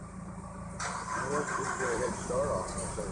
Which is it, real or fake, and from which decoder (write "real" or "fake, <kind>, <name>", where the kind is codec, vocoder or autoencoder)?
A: fake, vocoder, BigVGAN v2